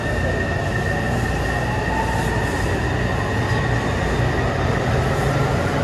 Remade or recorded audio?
recorded